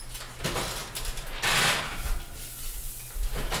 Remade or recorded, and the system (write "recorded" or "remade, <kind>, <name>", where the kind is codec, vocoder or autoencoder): recorded